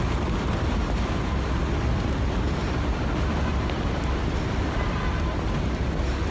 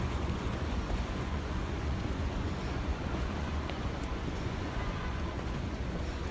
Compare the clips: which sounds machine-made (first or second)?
second